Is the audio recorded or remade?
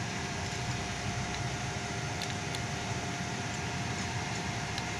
remade